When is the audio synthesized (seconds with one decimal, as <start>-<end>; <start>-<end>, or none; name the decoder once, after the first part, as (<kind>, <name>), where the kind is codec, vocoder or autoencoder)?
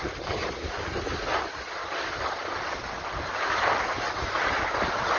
none